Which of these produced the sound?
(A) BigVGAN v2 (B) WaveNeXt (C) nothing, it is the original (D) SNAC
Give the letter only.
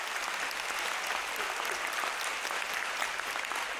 A